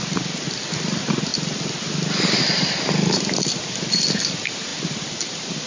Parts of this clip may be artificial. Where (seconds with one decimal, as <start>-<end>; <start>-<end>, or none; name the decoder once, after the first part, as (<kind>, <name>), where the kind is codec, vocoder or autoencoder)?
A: none